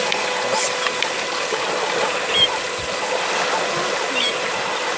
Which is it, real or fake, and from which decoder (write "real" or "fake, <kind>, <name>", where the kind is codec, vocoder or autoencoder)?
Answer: real